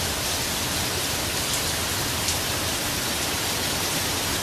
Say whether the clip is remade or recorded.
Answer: recorded